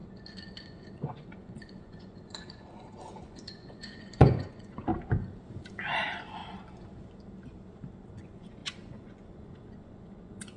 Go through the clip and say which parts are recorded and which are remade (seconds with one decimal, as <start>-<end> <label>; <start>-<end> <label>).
0.0-0.6 recorded; 0.6-4.9 remade; 4.9-5.7 recorded; 5.7-6.4 remade; 6.4-8.2 recorded; 8.2-10.6 remade